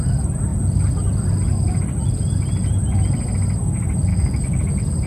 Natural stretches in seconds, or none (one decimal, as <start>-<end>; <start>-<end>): 0.0-4.1; 4.6-5.1